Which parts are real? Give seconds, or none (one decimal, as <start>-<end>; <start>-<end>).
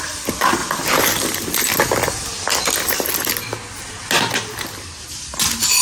0.0-5.8